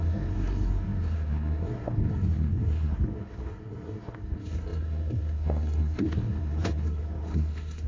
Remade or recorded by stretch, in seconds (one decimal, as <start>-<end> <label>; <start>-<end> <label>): 0.0-7.9 remade